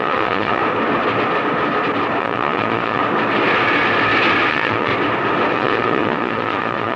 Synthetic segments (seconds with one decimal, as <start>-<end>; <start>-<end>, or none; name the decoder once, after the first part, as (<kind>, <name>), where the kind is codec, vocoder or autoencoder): 0.0-0.6 (vocoder, Vocos); 2.2-3.0; 4.5-4.9; 5.5-7.0